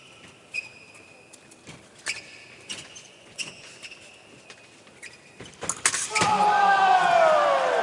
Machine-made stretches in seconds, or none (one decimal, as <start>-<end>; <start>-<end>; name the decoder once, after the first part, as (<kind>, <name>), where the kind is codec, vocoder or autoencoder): 2.7-3.7 (vocoder, Vocos)